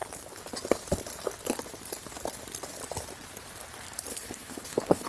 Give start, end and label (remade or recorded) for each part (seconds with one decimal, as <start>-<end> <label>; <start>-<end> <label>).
0.0-4.1 recorded; 4.1-5.1 remade

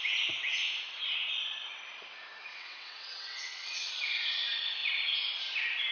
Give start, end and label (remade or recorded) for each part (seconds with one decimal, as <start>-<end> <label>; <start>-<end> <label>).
0.0-0.5 recorded; 0.5-1.0 remade; 1.0-2.5 recorded; 2.5-3.9 remade; 3.9-5.9 recorded

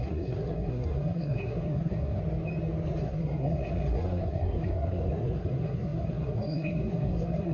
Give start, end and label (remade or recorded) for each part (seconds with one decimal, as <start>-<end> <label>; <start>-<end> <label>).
0.0-2.2 remade; 2.2-3.0 recorded; 3.0-7.5 remade

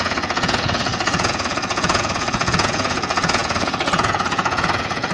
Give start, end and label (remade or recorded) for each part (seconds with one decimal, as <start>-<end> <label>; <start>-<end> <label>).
0.0-5.1 remade

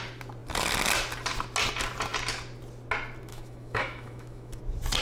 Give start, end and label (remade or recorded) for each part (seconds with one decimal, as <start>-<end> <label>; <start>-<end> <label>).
0.0-3.3 recorded; 3.3-4.6 remade; 4.6-5.0 recorded

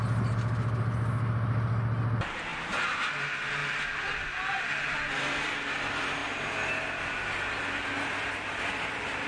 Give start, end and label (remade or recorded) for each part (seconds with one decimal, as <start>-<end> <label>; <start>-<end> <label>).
0.0-3.6 recorded; 3.6-5.1 remade; 5.1-9.3 recorded

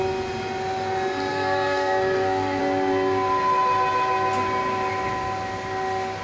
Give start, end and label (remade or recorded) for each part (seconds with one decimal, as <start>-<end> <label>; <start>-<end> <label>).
0.0-1.3 recorded; 1.3-2.6 remade; 2.6-6.2 recorded

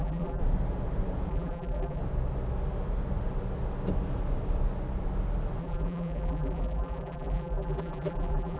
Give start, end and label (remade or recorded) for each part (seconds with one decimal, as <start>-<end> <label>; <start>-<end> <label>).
0.0-0.4 remade; 0.4-1.3 recorded; 1.3-2.0 remade; 2.0-5.6 recorded; 5.6-8.6 remade